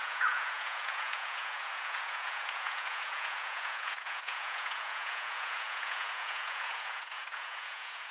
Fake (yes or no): yes